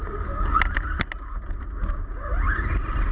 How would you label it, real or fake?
real